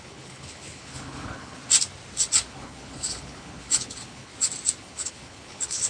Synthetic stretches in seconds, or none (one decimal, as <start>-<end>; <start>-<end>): 0.0-1.6; 2.5-4.3; 4.8-5.9

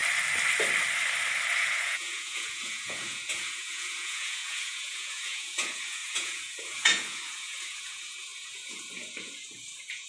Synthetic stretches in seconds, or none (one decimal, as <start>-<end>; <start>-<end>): 1.6-10.1

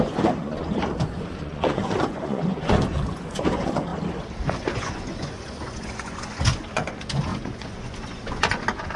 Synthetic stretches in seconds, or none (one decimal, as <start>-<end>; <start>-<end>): 0.0-3.9; 4.5-9.0

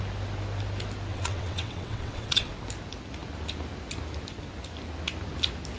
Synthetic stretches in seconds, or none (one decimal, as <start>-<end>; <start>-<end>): 1.1-2.5

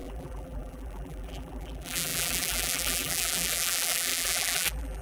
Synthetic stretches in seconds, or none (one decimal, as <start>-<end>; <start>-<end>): 0.0-5.0